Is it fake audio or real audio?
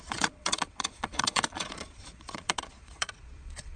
fake